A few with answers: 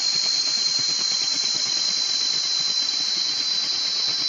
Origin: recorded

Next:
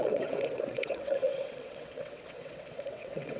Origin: remade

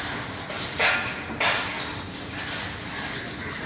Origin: recorded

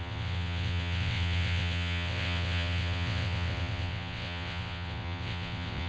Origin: remade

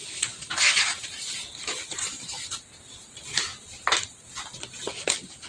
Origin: recorded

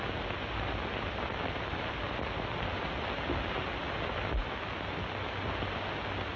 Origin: recorded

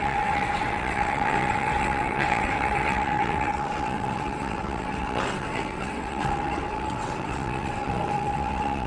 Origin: remade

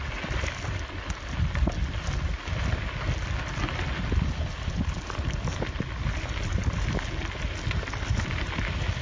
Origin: recorded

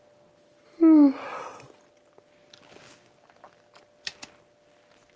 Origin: recorded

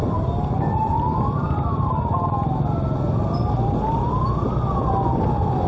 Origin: recorded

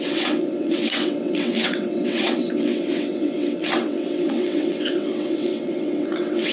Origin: remade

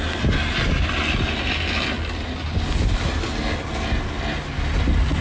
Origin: recorded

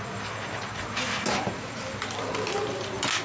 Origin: recorded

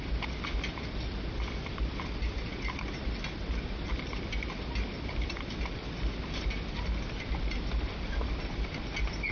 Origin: recorded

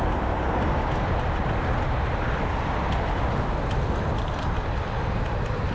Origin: recorded